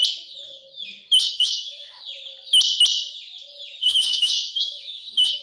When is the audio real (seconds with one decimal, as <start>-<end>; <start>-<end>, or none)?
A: 0.0-1.2; 2.0-3.8